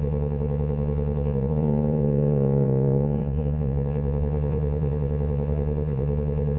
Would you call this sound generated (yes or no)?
yes